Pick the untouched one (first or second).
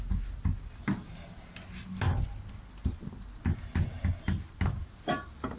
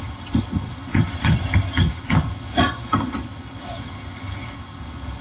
first